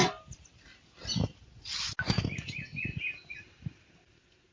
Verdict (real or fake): real